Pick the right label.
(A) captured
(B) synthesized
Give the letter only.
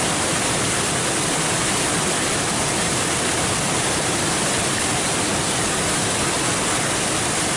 A